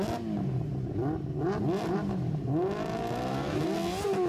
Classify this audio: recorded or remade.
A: recorded